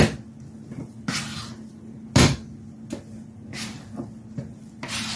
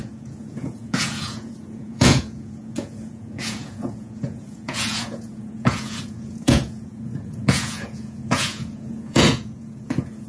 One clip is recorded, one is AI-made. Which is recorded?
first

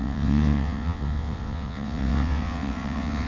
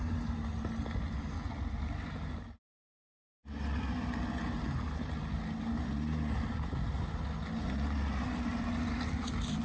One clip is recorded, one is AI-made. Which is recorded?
second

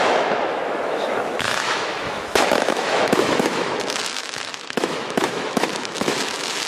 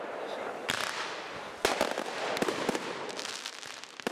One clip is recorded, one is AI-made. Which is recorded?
second